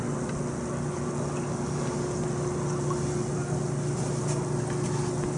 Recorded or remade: recorded